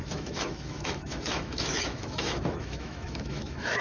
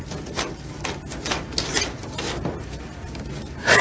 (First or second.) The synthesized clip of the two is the first